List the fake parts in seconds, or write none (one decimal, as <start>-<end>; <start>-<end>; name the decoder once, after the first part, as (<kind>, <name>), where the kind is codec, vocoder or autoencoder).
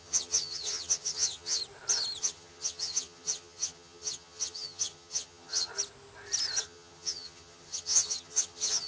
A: 0.0-1.6 (vocoder, HiFi-GAN); 2.2-5.7; 6.6-8.9